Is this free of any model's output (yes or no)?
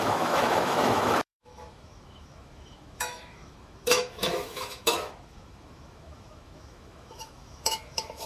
no